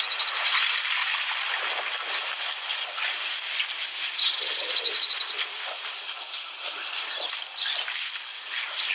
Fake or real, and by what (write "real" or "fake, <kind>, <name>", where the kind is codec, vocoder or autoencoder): real